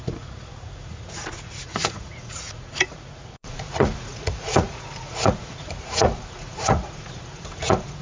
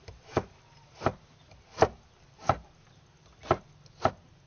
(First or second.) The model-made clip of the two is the first